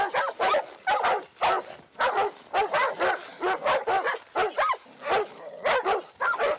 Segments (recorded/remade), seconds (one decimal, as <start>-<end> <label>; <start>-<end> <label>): 0.0-6.6 recorded